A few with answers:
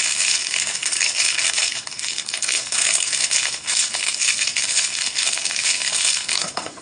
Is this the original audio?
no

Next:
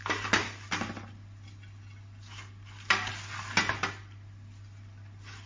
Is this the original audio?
yes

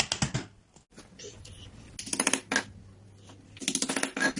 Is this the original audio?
yes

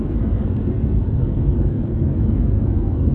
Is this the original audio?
no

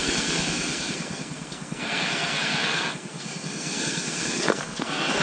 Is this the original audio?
no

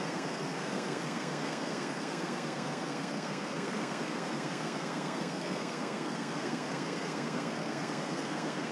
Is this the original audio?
no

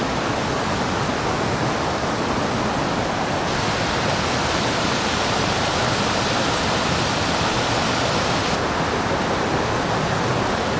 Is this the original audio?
yes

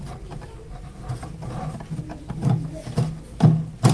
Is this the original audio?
yes